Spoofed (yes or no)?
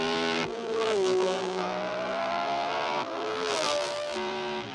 yes